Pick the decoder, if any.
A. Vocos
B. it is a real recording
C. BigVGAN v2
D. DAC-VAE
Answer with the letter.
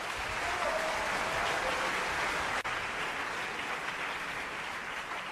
B